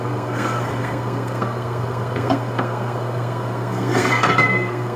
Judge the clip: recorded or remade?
remade